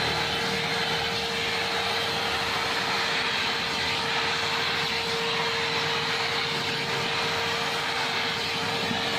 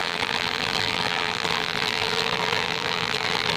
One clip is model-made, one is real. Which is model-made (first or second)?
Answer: second